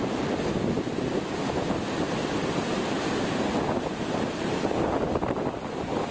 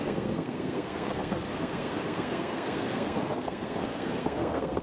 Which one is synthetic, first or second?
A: second